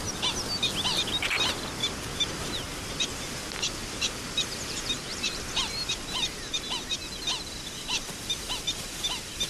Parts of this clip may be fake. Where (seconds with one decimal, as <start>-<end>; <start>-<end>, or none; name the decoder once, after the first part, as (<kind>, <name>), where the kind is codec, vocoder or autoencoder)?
1.8-3.4 (vocoder, BigVGAN v2); 3.8-6.8